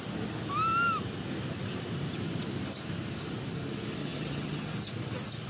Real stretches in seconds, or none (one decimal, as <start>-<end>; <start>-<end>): 0.0-4.0; 4.7-5.5